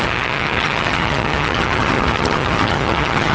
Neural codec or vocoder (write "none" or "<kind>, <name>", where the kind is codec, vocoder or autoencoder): vocoder, HiFi-GAN